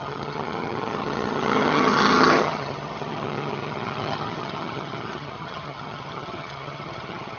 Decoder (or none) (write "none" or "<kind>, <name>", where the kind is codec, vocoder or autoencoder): vocoder, HiFi-GAN